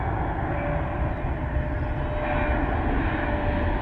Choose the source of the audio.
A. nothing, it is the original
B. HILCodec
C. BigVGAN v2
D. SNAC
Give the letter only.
A